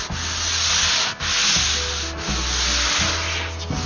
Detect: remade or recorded recorded